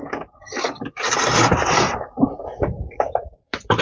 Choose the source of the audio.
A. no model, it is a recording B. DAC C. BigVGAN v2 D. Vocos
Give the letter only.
C